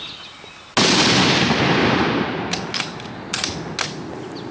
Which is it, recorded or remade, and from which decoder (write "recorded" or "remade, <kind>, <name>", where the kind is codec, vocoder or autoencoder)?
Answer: recorded